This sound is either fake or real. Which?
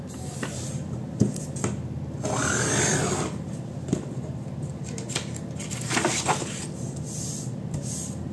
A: real